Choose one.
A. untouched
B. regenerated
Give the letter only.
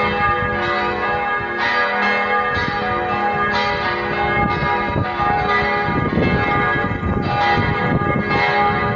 A